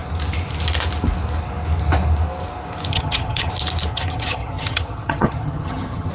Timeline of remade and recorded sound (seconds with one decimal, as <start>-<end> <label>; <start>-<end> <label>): 0.0-2.9 recorded; 2.9-3.5 remade; 3.5-3.9 recorded; 3.9-6.1 remade